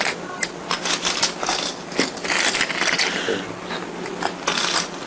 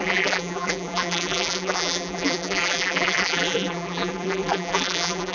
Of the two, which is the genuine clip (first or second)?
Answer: first